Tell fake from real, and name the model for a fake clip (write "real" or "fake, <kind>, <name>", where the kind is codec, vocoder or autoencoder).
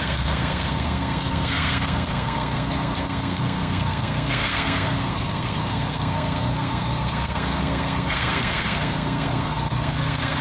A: fake, codec, SNAC